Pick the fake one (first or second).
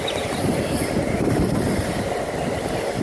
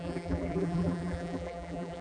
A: second